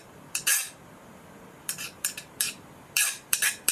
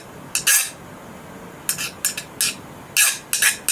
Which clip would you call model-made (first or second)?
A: first